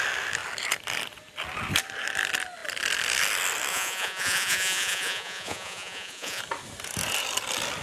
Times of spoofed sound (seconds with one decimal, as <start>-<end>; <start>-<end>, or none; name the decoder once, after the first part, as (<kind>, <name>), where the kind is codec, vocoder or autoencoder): 3.7-6.4 (vocoder, Vocos)